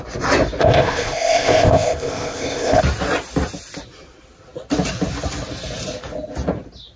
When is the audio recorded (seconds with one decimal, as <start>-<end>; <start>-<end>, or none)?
0.0-0.6; 2.8-7.0